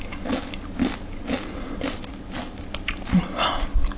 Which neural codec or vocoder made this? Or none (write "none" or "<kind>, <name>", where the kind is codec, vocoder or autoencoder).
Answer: none